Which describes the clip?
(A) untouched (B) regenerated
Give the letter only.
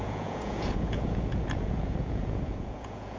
B